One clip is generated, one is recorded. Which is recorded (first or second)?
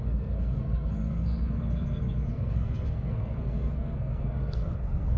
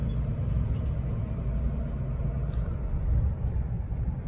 second